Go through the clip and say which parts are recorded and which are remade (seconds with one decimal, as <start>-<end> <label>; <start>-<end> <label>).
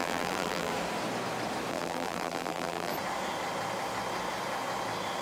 0.0-0.7 remade; 0.7-1.7 recorded; 1.7-2.9 remade; 2.9-5.2 recorded